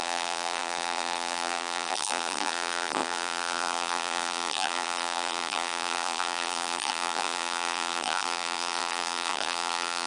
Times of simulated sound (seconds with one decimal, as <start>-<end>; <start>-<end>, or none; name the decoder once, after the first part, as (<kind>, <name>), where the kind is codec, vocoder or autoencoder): 0.0-10.1 (vocoder, BigVGAN v2)

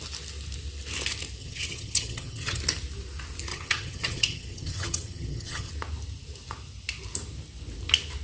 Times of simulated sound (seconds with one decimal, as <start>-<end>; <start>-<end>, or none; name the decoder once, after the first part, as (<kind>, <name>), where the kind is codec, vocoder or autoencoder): 1.4-2.6 (vocoder, HiFi-GAN); 3.5-5.7

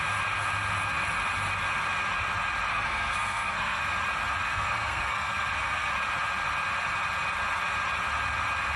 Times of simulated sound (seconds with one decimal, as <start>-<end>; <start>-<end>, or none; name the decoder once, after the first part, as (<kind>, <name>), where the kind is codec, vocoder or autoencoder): 2.7-3.8 (codec, SNAC); 4.4-5.9

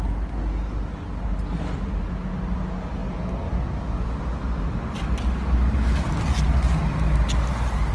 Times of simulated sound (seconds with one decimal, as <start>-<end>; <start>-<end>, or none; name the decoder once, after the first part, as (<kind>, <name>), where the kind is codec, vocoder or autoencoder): none

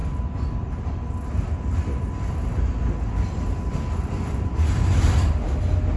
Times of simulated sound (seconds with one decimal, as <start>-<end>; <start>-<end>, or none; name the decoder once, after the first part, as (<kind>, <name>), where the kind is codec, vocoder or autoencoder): none